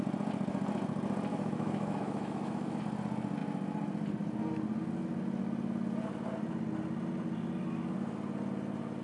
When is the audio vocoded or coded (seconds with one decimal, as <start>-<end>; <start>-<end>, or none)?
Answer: 1.3-2.8